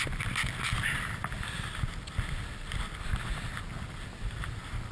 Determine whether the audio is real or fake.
real